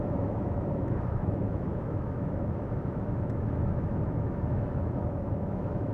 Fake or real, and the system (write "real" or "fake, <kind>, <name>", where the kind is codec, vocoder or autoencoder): fake, autoencoder, DAC-VAE